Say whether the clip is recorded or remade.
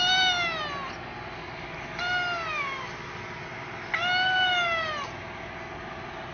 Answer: recorded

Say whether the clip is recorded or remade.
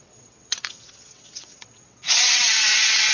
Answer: remade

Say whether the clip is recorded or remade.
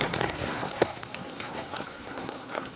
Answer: remade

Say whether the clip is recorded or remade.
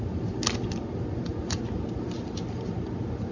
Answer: recorded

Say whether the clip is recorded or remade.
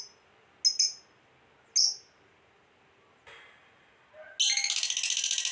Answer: recorded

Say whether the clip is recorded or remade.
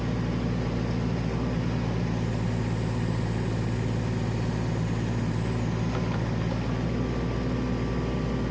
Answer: recorded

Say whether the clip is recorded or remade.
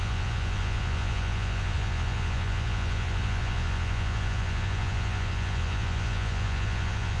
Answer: remade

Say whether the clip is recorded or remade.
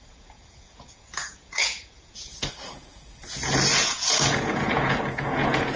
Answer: remade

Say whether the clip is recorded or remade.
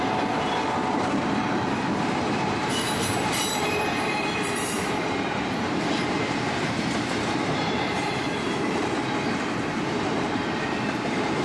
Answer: remade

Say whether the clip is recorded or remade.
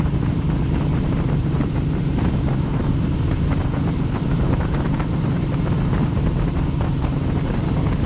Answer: remade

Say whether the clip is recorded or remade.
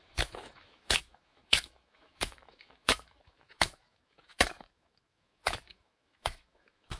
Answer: remade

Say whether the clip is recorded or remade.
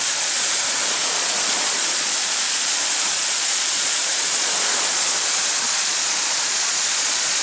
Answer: remade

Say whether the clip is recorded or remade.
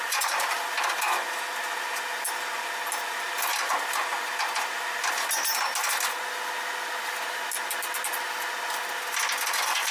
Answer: recorded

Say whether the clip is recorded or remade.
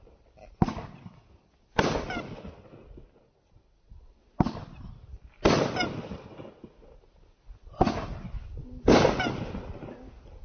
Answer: recorded